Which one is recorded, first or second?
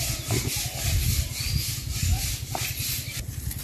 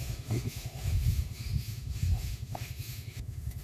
first